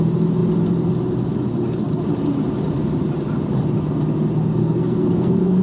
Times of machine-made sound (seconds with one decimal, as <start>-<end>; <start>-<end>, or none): 4.6-5.6